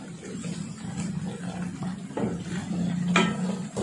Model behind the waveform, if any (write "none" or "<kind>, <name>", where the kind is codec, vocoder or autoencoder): none